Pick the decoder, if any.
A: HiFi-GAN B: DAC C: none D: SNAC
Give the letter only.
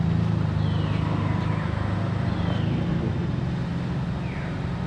C